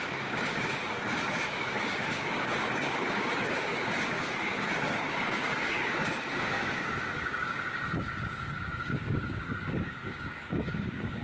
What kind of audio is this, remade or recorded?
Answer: remade